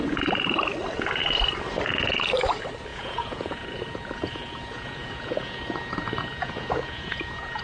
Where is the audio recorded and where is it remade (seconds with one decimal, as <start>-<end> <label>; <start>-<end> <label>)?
0.0-2.9 recorded; 2.9-7.6 remade